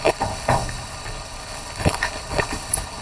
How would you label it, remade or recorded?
remade